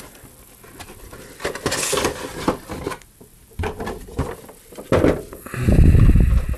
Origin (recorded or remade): recorded